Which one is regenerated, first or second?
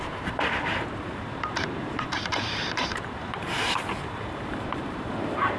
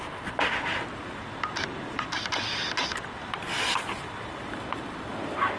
first